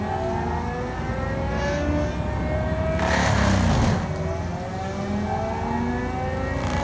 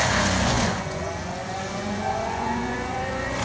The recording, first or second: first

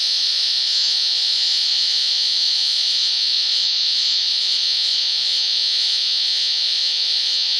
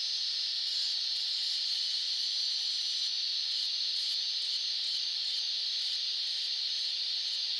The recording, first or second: second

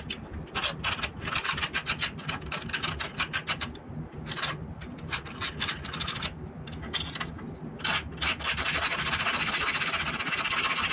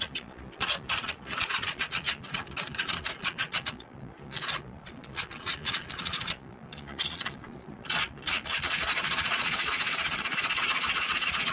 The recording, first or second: first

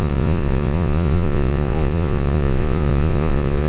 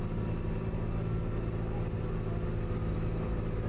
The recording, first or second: second